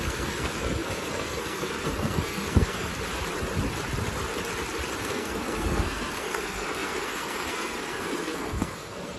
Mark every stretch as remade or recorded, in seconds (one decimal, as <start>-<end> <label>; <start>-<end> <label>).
0.0-2.9 remade; 2.9-5.0 recorded; 5.0-9.2 remade

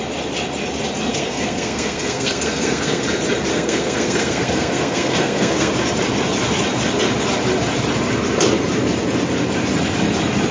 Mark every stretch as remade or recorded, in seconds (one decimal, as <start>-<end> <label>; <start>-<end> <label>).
0.0-1.1 recorded; 1.1-3.0 remade; 3.0-3.5 recorded; 3.5-5.7 remade; 5.7-10.5 recorded

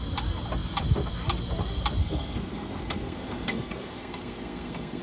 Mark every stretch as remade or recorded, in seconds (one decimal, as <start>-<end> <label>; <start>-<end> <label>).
0.0-2.0 recorded; 2.0-5.0 remade

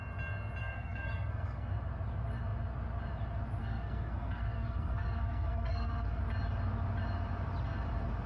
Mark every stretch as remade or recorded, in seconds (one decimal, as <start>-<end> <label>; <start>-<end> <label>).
0.0-0.6 recorded; 0.6-1.7 remade; 1.7-3.6 recorded; 3.6-6.2 remade; 6.2-8.3 recorded

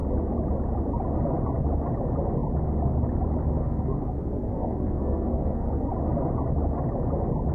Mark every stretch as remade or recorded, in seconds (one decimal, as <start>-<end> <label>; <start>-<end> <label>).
0.0-3.6 recorded; 3.6-5.9 remade; 5.9-7.5 recorded